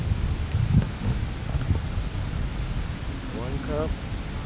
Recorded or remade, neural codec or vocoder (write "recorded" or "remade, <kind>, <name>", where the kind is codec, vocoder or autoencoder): recorded